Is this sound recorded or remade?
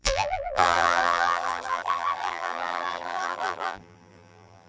remade